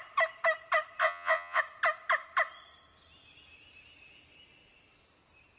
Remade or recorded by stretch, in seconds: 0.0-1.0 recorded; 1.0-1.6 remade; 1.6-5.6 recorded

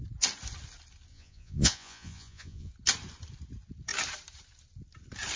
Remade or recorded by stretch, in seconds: 0.0-1.1 recorded; 1.1-2.7 remade; 2.7-5.4 recorded

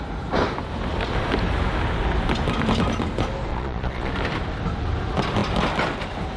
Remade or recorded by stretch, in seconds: 0.0-3.5 recorded; 3.5-4.1 remade; 4.1-6.4 recorded

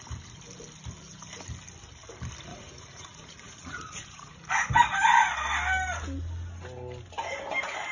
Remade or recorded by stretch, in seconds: 0.0-2.5 recorded; 2.5-4.5 remade; 4.5-7.9 recorded

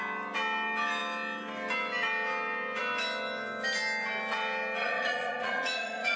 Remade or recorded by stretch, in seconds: 0.0-4.8 recorded; 4.8-6.2 remade

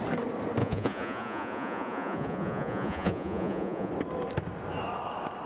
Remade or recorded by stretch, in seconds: 0.0-0.6 recorded; 0.6-3.9 remade; 3.9-5.5 recorded

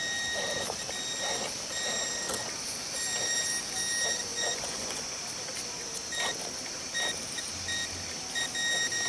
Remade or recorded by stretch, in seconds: 0.0-4.3 recorded; 4.3-5.2 remade; 5.2-9.1 recorded

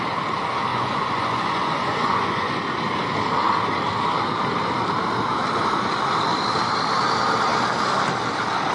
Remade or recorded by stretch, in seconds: 0.0-0.7 recorded; 0.7-2.6 remade; 2.6-8.7 recorded